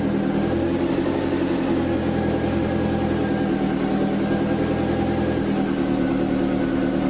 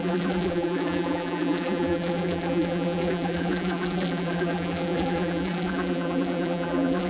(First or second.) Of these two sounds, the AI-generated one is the second